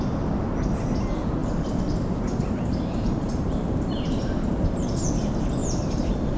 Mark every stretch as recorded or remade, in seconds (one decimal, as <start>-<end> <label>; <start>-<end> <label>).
0.0-1.4 recorded; 1.4-5.1 remade; 5.1-5.6 recorded; 5.6-6.4 remade